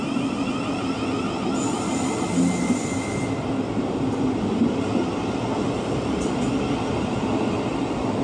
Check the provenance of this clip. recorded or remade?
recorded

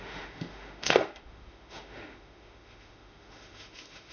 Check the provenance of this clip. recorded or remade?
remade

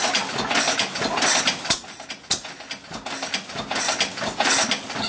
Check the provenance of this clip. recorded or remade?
recorded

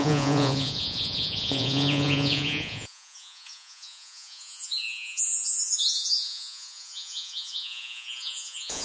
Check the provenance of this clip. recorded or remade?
remade